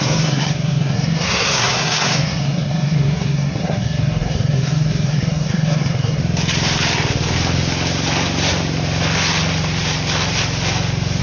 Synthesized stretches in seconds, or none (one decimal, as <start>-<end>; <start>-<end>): 0.0-6.2